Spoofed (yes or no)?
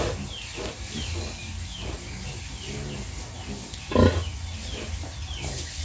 no